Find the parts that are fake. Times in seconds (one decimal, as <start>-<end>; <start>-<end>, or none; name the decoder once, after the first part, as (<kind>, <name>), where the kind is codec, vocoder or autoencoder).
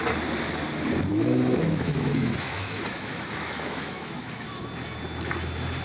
1.1-4.6 (autoencoder, DAC-VAE)